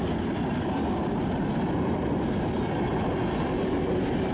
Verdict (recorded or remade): recorded